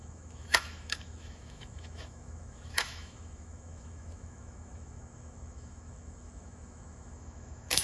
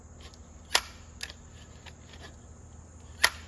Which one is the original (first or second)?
second